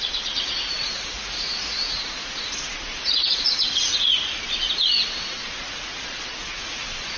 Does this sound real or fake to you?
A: fake